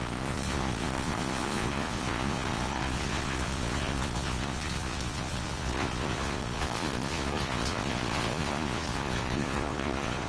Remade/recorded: remade